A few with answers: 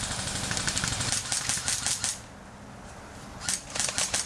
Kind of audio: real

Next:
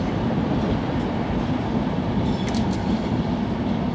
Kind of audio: fake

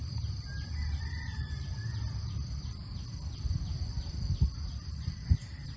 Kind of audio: fake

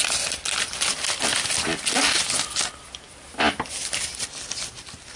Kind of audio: real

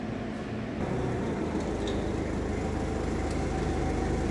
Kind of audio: real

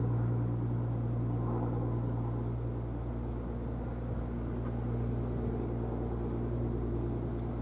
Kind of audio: real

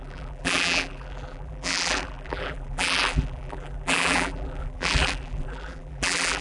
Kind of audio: fake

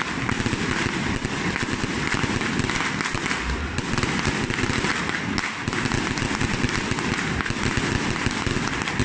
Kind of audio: real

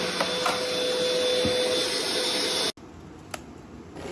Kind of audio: real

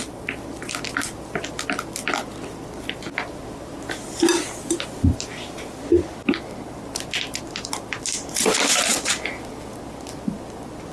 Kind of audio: real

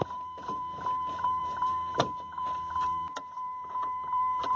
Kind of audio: fake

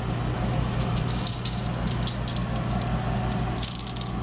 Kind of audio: real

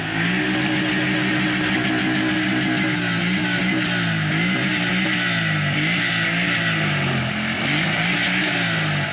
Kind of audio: real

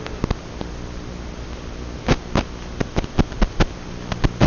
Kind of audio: real